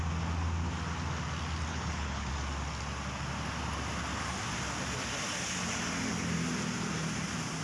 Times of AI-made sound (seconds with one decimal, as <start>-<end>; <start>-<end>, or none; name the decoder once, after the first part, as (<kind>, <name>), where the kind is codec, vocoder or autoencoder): 1.7-2.3 (codec, HILCodec)